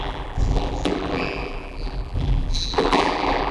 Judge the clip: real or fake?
fake